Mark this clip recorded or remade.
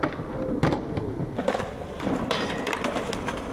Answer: remade